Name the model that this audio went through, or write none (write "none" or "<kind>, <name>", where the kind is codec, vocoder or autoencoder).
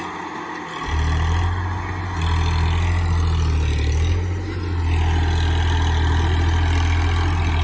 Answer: none